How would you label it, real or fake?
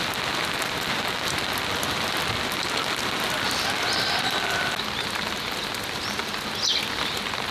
real